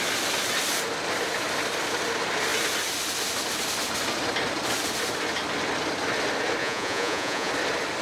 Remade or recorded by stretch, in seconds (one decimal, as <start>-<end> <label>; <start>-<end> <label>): 0.0-6.6 recorded; 6.6-7.5 remade; 7.5-8.0 recorded